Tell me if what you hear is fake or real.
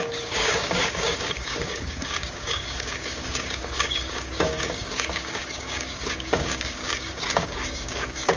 fake